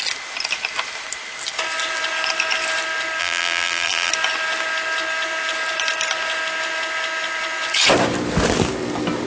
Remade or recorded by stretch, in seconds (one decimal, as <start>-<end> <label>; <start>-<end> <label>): 0.0-3.2 recorded; 3.2-4.1 remade; 4.1-9.3 recorded